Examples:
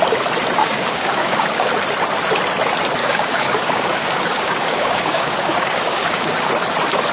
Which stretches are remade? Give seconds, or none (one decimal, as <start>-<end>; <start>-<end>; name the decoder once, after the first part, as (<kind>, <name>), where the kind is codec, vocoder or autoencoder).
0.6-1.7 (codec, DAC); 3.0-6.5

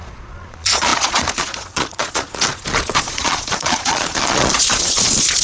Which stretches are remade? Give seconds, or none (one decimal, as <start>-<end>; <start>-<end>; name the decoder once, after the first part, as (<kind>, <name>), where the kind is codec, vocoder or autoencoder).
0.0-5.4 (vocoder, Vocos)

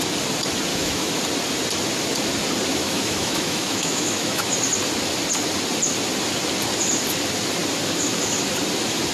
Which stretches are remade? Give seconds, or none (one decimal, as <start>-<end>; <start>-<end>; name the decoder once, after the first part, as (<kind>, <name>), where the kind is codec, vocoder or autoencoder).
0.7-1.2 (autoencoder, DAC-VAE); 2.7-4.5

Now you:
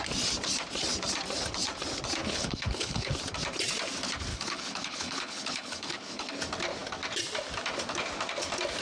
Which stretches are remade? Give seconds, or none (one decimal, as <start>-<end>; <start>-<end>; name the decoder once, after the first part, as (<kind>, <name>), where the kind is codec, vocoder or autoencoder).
2.2-3.1 (codec, HILCodec); 4.3-6.3

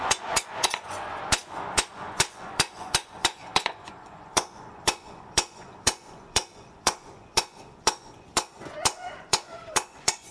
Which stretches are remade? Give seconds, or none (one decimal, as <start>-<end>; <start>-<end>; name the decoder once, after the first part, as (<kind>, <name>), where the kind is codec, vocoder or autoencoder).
0.0-10.3 (vocoder, Vocos)

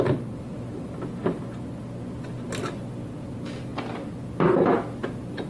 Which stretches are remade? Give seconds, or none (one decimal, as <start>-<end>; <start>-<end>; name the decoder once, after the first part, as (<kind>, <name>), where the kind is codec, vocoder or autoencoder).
none